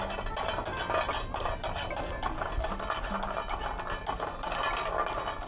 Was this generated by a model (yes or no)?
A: no